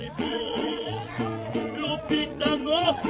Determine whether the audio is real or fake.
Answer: fake